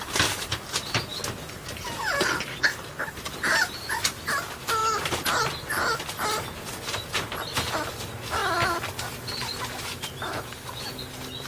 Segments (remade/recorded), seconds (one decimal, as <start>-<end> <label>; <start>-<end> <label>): 0.0-11.5 recorded